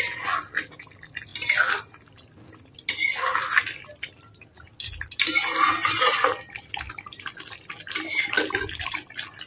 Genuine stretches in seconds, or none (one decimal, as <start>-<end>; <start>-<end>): 0.0-9.5